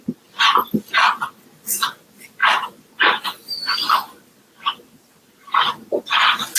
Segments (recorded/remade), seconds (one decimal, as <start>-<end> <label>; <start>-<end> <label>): 0.0-2.4 recorded; 2.4-2.9 remade; 2.9-6.6 recorded